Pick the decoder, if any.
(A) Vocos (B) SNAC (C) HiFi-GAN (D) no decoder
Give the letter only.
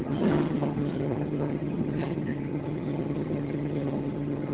C